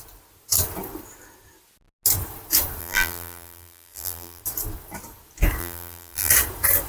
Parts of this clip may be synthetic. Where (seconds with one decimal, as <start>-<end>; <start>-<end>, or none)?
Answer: 2.8-4.4; 5.6-6.3